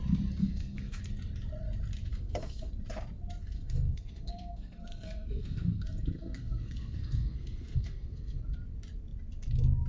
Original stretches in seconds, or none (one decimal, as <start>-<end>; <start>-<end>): 0.0-0.4; 1.0-2.1; 2.7-3.4; 8.4-9.9

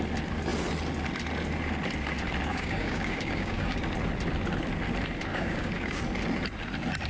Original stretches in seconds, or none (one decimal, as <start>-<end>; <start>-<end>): 0.0-2.5; 3.8-5.3; 6.0-7.1